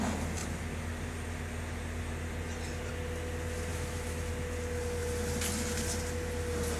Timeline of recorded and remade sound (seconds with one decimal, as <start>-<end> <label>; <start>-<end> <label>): 0.0-3.7 recorded; 3.7-4.3 remade; 4.3-6.8 recorded